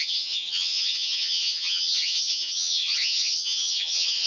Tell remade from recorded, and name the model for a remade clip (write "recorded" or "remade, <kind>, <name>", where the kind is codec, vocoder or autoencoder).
remade, vocoder, HiFi-GAN